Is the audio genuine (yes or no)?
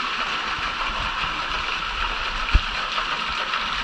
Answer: yes